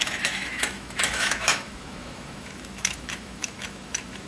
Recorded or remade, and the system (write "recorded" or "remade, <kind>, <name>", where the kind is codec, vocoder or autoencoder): remade, autoencoder, DAC-VAE